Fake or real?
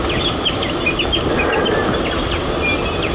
real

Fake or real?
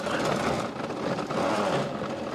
real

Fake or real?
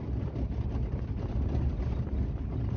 real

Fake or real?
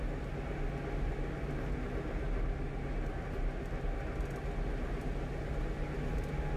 real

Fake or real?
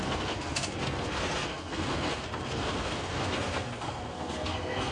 fake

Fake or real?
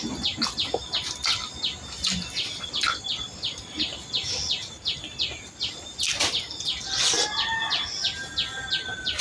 real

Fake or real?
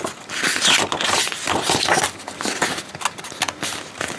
real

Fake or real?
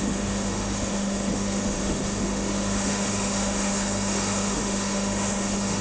fake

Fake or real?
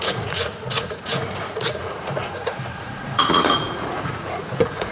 fake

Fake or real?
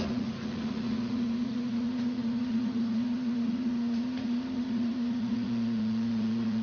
fake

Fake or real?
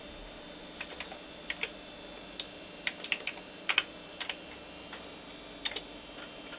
real